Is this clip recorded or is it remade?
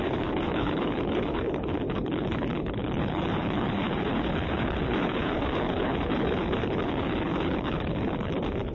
remade